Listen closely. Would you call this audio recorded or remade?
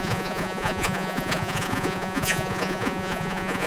remade